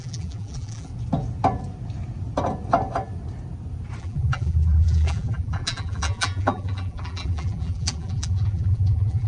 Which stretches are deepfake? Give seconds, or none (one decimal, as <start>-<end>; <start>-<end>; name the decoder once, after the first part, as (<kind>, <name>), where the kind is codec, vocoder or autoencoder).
0.0-0.9 (vocoder, BigVGAN v2); 4.0-9.3